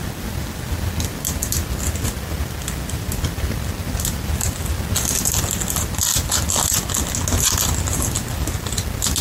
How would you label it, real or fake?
real